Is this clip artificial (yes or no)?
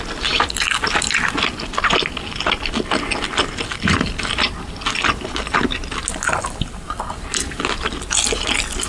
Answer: no